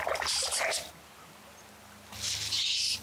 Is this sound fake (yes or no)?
no